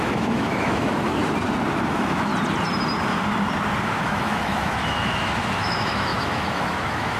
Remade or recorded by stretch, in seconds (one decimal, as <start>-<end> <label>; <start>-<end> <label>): 0.0-1.2 remade; 1.2-1.9 recorded; 1.9-2.3 remade; 2.3-3.8 recorded; 3.8-7.2 remade